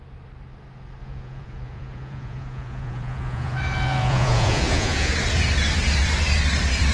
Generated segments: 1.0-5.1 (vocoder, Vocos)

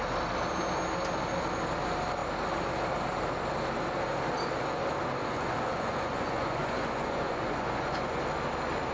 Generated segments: 5.2-8.2 (vocoder, Vocos)

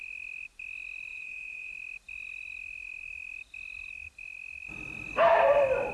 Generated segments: 1.1-1.7 (vocoder, Vocos)

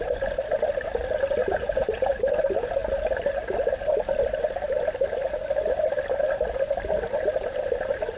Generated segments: 1.4-2.1 (vocoder, Vocos)

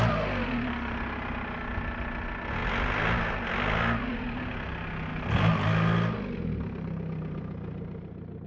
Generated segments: none

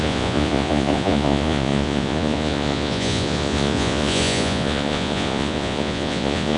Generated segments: 0.0-6.6 (vocoder, Vocos)

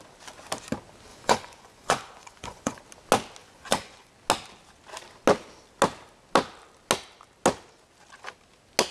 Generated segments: 1.1-2.8 (vocoder, Vocos); 3.4-4.1